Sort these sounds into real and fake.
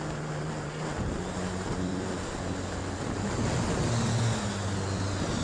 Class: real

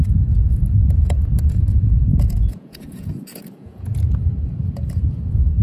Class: fake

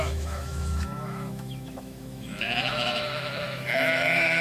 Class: fake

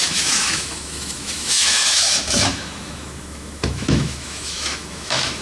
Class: fake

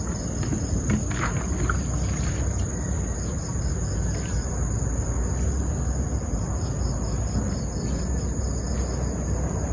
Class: real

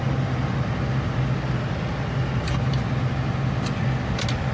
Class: real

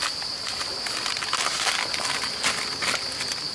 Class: real